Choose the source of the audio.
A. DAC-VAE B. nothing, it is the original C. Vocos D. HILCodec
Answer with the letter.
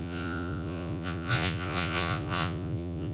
C